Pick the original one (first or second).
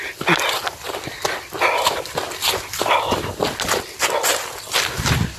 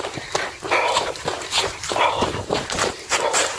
first